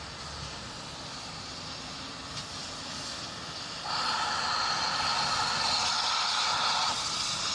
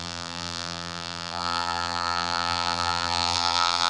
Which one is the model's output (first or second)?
second